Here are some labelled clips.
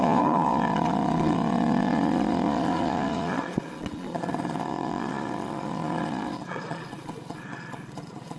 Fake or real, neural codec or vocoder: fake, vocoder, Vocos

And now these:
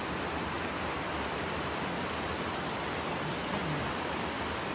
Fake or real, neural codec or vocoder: real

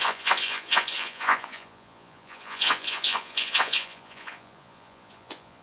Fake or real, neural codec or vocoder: fake, vocoder, Vocos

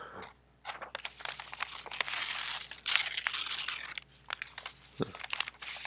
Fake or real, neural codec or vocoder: real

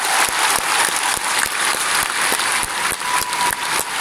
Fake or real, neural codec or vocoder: real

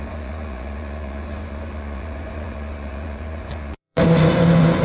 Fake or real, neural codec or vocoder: fake, vocoder, Vocos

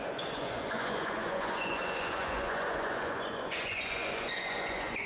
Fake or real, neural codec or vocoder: fake, vocoder, Vocos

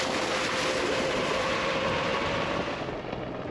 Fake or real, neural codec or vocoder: real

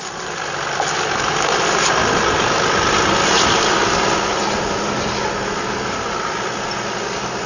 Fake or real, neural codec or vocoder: real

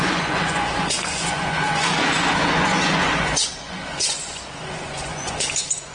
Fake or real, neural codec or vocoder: fake, vocoder, Vocos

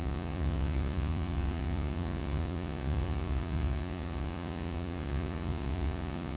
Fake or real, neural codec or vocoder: fake, vocoder, Vocos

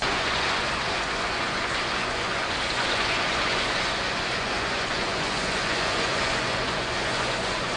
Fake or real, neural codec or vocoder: fake, vocoder, Vocos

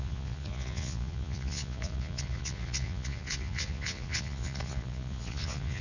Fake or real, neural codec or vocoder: fake, vocoder, Vocos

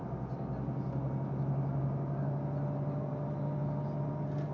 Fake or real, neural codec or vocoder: real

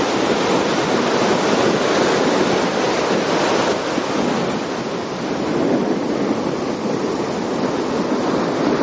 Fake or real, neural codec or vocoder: real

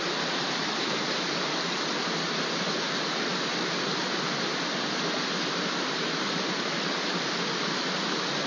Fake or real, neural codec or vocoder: real